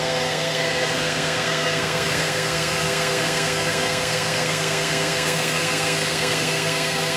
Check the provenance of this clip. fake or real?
fake